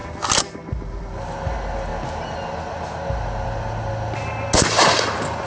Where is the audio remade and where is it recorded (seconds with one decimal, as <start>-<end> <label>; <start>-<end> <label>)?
0.0-5.5 recorded